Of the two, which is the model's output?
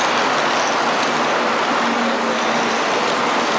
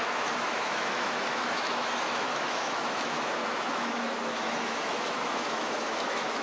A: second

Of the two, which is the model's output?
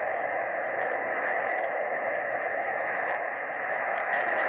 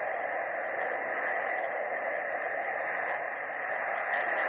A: first